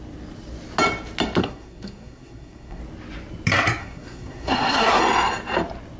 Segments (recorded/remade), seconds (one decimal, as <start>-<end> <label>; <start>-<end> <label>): 0.0-1.4 recorded; 1.4-2.8 remade; 2.8-3.8 recorded; 3.8-5.0 remade; 5.0-6.0 recorded